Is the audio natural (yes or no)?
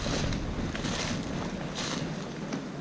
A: yes